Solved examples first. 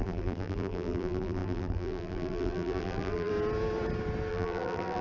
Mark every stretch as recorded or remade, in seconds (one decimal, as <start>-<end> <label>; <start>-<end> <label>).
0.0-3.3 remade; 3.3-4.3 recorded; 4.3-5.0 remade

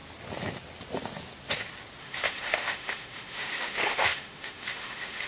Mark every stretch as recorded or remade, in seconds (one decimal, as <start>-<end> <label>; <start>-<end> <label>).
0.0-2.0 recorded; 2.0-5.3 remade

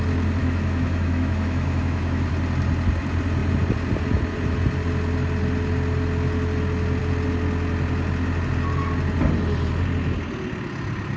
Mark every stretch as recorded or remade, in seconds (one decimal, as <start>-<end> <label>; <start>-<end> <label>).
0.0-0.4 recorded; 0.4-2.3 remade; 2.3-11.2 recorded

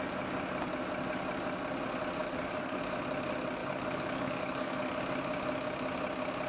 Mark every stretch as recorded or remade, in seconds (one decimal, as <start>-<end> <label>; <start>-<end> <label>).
0.0-2.2 recorded; 2.2-2.8 remade; 2.8-3.6 recorded; 3.6-5.0 remade; 5.0-6.5 recorded

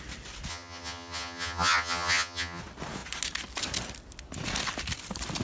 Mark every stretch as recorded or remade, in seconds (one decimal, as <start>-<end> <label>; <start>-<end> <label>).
0.0-0.5 recorded; 0.5-2.6 remade; 2.6-5.4 recorded